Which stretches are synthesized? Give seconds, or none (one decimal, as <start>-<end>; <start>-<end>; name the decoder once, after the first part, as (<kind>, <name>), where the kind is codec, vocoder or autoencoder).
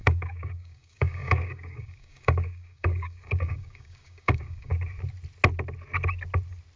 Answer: 0.0-4.7 (codec, DAC)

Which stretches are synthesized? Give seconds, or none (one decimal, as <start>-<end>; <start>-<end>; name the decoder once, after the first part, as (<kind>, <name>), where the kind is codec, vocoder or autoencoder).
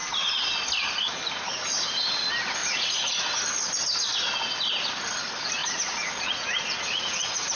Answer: 2.6-3.2 (vocoder, Vocos); 5.6-7.6